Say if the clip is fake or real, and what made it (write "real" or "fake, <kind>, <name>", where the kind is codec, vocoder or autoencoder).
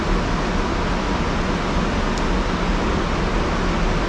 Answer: real